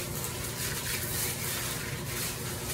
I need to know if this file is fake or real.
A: real